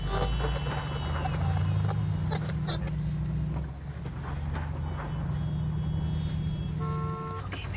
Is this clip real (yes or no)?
yes